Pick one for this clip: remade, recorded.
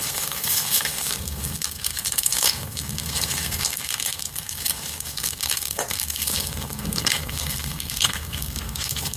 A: remade